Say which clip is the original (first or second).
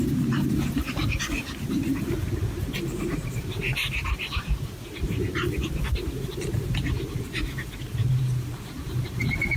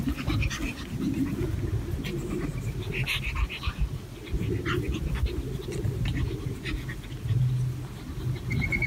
second